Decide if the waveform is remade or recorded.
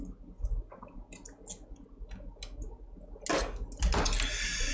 recorded